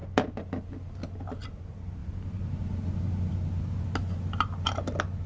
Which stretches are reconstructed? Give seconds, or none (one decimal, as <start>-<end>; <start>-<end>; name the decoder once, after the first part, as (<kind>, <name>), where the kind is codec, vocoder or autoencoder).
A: none